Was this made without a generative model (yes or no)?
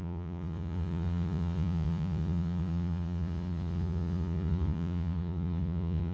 no